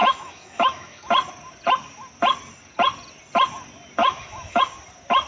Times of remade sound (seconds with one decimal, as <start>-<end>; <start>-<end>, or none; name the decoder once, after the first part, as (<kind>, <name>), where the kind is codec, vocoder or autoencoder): 0.0-1.1 (autoencoder, DAC-VAE); 4.0-4.6

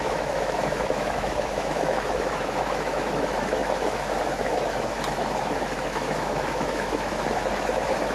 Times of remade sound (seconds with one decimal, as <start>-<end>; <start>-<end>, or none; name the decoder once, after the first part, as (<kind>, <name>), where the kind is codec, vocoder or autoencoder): 0.0-8.1 (autoencoder, DAC-VAE)

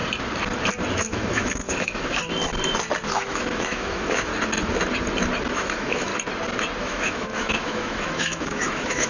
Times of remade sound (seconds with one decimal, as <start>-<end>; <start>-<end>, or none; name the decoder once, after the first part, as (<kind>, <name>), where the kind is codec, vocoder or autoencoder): 0.9-2.2 (autoencoder, DAC-VAE); 3.3-4.3; 5.5-6.1; 6.8-9.1

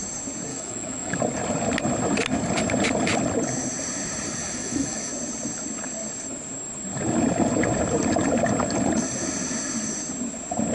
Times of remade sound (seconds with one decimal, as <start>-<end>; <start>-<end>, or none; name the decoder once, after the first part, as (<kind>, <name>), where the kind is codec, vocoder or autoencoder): 0.5-1.2 (autoencoder, DAC-VAE); 4.4-5.1

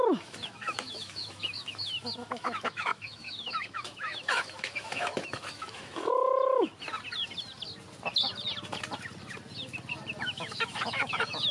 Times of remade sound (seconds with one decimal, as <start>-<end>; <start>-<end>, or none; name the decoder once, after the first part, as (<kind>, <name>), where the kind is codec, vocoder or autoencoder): 0.0-6.7 (autoencoder, DAC-VAE); 10.2-11.5